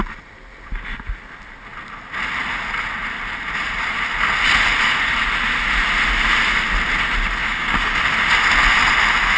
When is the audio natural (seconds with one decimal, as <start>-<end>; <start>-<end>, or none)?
0.0-7.4; 8.0-9.4